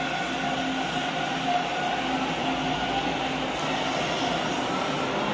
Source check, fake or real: real